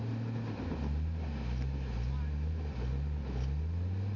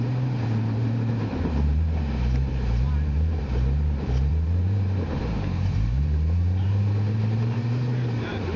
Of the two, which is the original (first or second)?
first